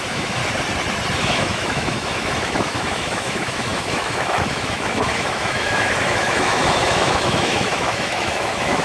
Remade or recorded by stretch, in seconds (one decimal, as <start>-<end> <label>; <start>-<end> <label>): 0.0-0.4 remade; 0.4-1.2 recorded; 1.2-8.8 remade